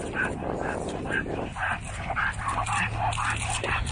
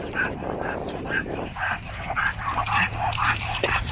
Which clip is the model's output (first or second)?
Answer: second